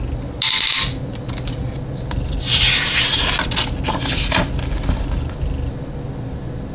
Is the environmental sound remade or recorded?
recorded